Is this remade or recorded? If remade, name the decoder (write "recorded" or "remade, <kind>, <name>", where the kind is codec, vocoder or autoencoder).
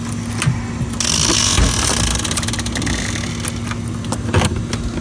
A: recorded